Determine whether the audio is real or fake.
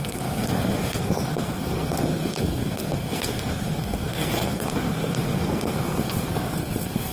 fake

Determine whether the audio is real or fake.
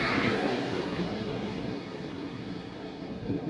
fake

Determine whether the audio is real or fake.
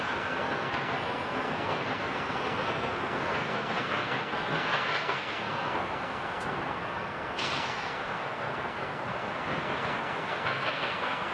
fake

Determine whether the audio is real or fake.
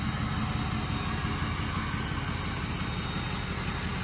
real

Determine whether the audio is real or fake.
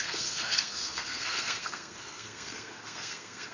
fake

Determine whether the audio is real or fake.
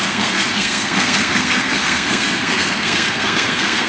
fake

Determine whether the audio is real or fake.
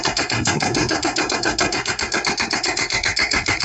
fake